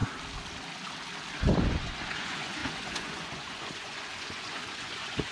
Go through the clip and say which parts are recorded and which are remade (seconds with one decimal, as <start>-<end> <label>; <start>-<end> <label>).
0.0-1.6 recorded; 1.6-5.3 remade